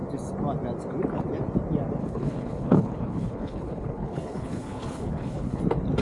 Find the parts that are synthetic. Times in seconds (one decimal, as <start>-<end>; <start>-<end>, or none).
2.0-5.6